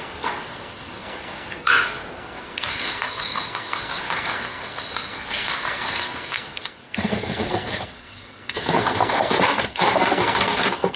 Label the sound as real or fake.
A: fake